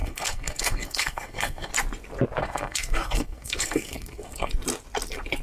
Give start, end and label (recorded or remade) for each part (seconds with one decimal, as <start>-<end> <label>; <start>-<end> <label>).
0.0-1.7 remade; 1.7-2.4 recorded; 2.4-4.5 remade; 4.5-5.4 recorded